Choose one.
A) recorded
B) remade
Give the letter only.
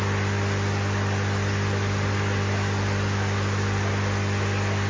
A